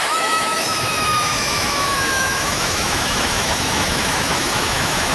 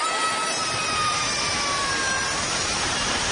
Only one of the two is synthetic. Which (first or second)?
first